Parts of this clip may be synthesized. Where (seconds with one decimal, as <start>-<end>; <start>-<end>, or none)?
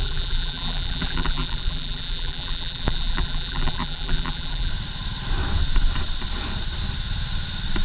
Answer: 0.0-4.7